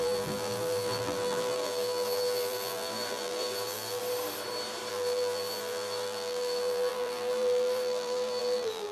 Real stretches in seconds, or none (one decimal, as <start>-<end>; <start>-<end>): 4.0-4.9